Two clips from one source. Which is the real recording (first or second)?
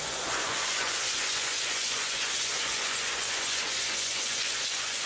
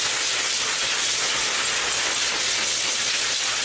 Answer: second